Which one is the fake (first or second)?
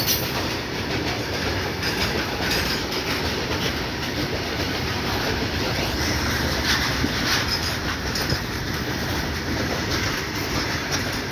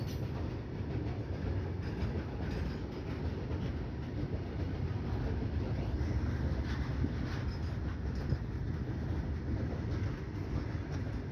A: first